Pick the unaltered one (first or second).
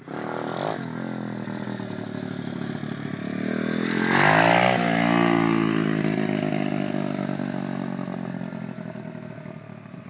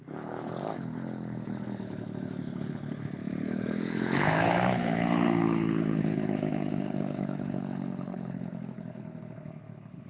first